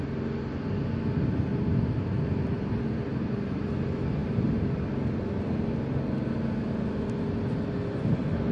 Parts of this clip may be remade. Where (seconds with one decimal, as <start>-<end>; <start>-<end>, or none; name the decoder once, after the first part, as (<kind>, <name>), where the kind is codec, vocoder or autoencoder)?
1.5-3.7 (vocoder, BigVGAN v2)